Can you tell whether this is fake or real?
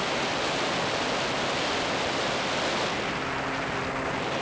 real